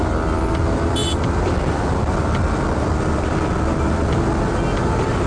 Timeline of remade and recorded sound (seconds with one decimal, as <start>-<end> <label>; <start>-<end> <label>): 0.0-5.3 recorded